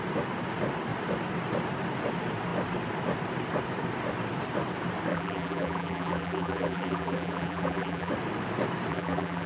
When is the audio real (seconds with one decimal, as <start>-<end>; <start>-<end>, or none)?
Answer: 0.0-5.1; 8.1-8.9

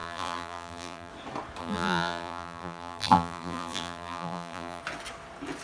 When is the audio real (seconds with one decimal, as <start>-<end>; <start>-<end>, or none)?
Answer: 1.1-1.6; 4.8-5.6

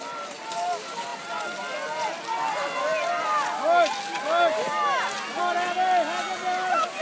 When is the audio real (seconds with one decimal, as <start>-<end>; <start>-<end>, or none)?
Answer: 0.0-7.0